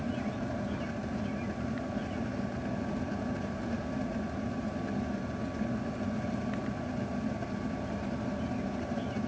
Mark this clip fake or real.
real